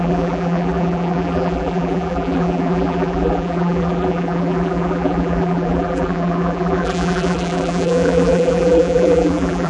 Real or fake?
fake